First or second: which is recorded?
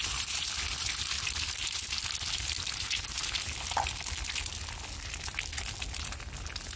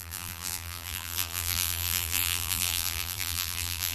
first